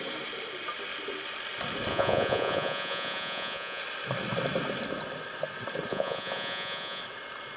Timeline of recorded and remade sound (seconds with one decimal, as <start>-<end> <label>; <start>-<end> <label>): 0.0-1.9 recorded; 1.9-3.8 remade; 3.8-5.9 recorded; 5.9-7.0 remade; 7.0-7.6 recorded